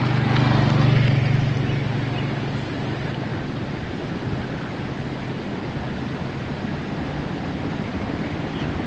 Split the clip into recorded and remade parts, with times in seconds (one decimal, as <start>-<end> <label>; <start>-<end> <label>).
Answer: 0.0-8.9 recorded